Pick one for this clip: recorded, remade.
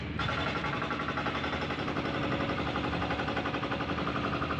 recorded